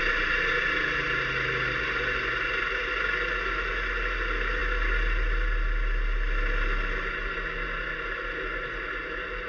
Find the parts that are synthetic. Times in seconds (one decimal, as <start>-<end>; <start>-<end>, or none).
none